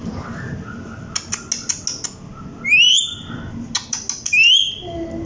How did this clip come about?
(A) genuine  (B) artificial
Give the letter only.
A